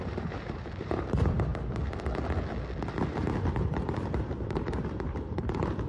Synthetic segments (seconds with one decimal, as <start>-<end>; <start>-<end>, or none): 0.0-1.5; 3.1-5.9